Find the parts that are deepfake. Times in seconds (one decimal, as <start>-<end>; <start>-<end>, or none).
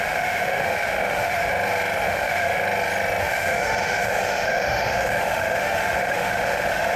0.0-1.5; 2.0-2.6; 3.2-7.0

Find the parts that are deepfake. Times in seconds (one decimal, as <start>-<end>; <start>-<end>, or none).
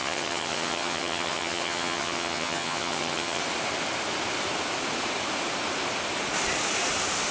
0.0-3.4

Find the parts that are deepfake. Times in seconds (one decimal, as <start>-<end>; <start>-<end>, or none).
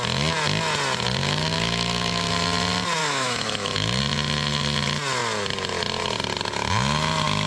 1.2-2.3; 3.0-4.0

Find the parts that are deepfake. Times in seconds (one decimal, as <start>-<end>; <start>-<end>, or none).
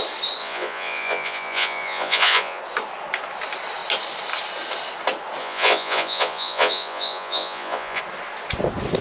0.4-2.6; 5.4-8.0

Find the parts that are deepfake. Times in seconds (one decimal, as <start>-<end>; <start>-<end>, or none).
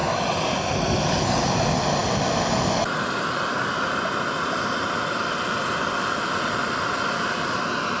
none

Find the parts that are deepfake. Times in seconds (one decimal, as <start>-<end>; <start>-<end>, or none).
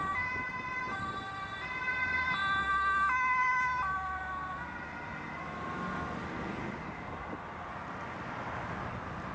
none